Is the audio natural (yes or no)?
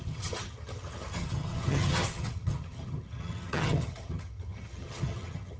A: no